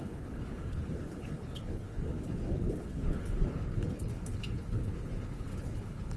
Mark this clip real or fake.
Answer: fake